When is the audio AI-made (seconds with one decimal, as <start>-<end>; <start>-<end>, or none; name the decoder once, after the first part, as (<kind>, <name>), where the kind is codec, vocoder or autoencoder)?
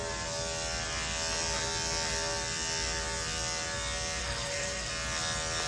4.2-4.9 (codec, SNAC)